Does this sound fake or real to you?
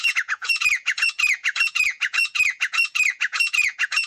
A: fake